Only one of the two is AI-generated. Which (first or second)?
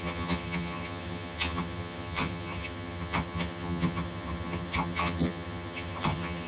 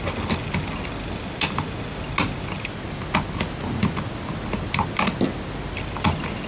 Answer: first